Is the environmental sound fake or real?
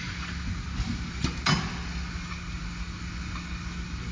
real